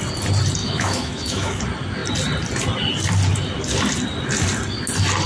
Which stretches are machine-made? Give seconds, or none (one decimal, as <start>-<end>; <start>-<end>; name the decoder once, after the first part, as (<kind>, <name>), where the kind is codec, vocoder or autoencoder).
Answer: 0.6-1.6 (autoencoder, DAC-VAE)